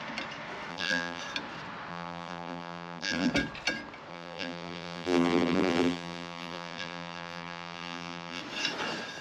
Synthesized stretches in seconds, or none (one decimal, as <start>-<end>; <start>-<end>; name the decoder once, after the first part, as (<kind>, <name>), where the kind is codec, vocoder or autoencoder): 0.7-1.2 (vocoder, BigVGAN v2); 1.9-3.3; 4.1-8.4